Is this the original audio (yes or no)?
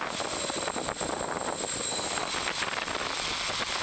yes